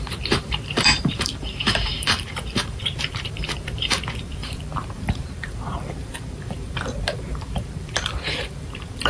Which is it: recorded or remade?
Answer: remade